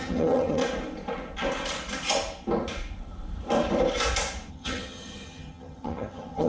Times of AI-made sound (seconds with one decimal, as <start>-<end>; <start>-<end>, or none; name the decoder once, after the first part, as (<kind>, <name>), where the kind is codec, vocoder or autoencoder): 0.0-0.6 (vocoder, HiFi-GAN); 4.5-6.5